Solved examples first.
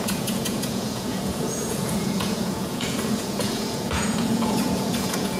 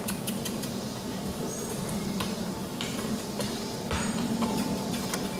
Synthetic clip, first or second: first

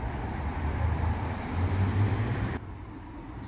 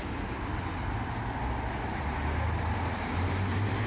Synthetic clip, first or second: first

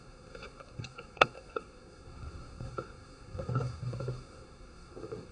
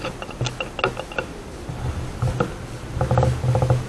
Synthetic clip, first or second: first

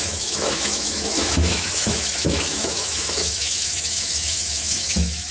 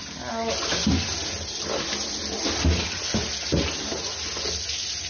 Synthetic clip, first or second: first